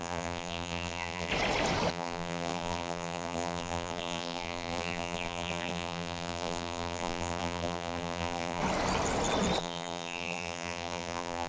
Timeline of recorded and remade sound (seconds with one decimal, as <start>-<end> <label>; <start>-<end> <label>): 0.0-1.3 remade; 1.3-1.9 recorded; 1.9-8.6 remade; 8.6-9.6 recorded; 9.6-11.5 remade